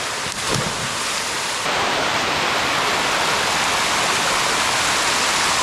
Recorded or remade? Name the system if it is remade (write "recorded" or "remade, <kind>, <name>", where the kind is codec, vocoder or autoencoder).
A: recorded